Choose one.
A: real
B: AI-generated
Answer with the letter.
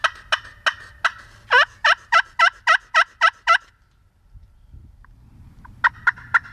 A